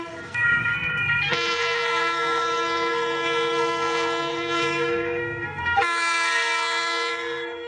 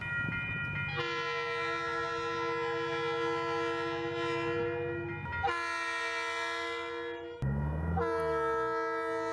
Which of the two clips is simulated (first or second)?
first